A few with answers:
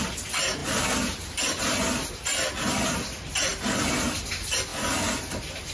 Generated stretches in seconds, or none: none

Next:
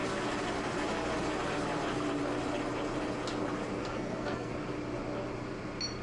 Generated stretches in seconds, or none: 3.8-4.5 (codec, SNAC)

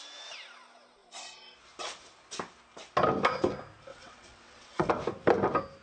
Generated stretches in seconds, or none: 3.9-4.9 (vocoder, WaveNeXt)

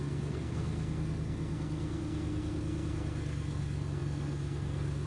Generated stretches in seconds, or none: 0.0-5.1 (codec, SNAC)

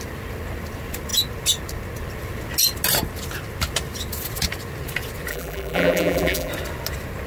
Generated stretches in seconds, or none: 5.3-6.5 (vocoder, BigVGAN v2)

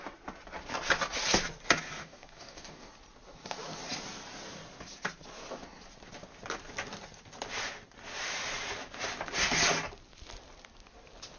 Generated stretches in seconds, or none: 2.0-2.9 (codec, DAC)

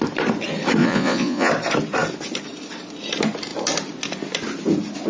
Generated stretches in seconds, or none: 0.8-1.5 (vocoder, Vocos)